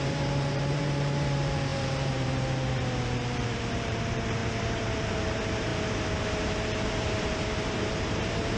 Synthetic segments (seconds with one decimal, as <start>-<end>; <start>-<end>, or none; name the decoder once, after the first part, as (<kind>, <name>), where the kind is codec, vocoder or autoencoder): 0.0-8.6 (vocoder, BigVGAN v2)